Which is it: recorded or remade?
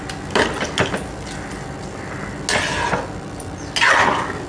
recorded